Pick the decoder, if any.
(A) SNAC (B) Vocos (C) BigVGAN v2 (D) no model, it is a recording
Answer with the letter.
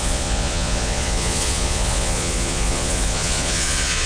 B